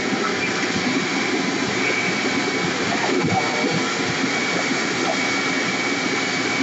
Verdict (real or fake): fake